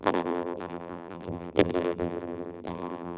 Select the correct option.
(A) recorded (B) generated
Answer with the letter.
B